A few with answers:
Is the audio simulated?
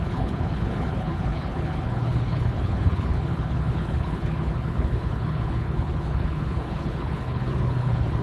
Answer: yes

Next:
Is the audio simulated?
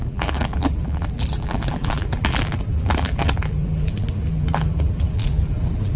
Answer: yes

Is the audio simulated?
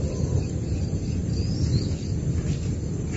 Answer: no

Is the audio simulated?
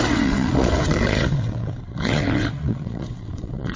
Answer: yes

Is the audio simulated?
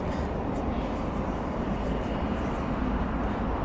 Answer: no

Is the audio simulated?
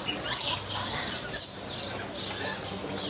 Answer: no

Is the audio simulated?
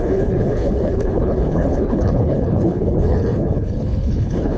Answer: yes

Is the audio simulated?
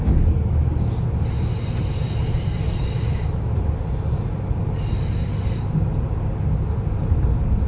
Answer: no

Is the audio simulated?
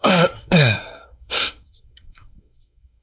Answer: yes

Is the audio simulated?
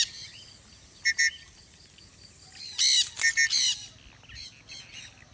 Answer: no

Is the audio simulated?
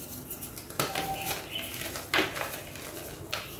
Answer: no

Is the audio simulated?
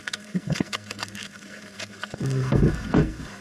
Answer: yes